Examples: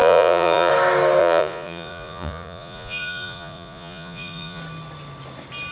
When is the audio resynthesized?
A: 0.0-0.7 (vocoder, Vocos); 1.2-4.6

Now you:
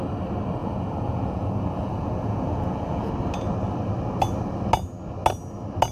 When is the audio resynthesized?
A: 0.6-3.1 (vocoder, Vocos)

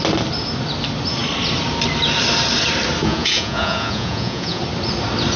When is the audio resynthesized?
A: 3.0-4.6 (vocoder, Vocos)

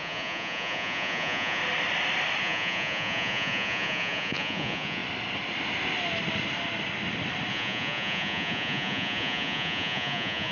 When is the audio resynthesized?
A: 0.0-1.6 (vocoder, Vocos); 2.4-5.0; 7.5-10.5

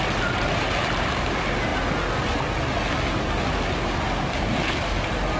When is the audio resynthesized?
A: none

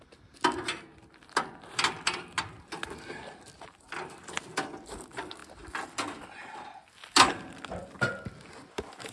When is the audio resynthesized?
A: none

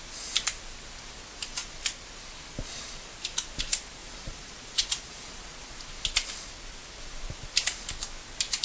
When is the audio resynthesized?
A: 4.0-5.8 (vocoder, Vocos)